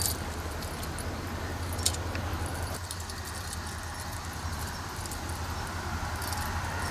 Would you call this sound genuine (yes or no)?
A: yes